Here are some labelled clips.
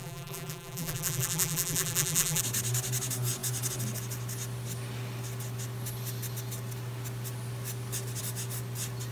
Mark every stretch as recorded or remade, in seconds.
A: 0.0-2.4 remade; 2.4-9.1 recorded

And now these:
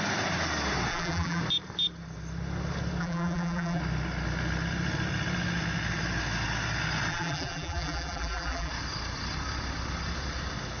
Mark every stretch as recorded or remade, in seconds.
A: 0.0-0.9 recorded; 0.9-1.4 remade; 1.4-3.0 recorded; 3.0-3.8 remade; 3.8-7.1 recorded; 7.1-8.7 remade; 8.7-10.8 recorded

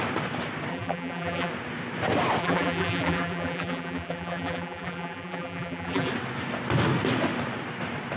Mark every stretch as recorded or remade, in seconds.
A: 0.0-0.7 recorded; 0.7-1.5 remade; 1.5-2.4 recorded; 2.4-6.1 remade; 6.1-8.2 recorded

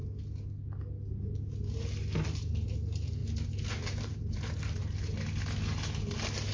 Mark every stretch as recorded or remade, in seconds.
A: 0.0-2.2 recorded; 2.2-3.2 remade; 3.2-3.7 recorded; 3.7-4.8 remade; 4.8-6.5 recorded